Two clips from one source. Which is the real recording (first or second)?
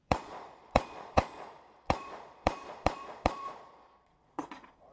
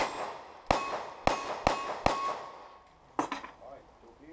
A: second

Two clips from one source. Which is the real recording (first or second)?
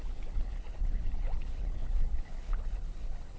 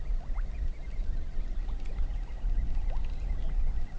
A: second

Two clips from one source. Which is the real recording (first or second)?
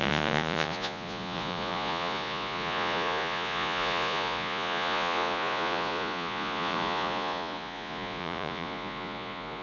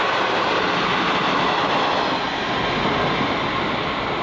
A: second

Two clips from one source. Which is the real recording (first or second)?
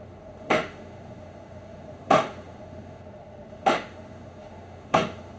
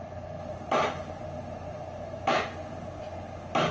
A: second